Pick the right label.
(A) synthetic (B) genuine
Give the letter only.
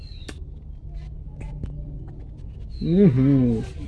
B